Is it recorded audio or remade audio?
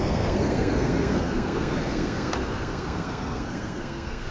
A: remade